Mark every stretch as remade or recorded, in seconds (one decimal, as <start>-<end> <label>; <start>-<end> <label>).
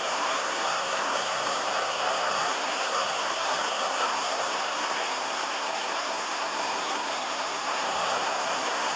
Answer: 0.0-9.0 remade